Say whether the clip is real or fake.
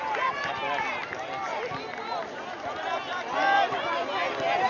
real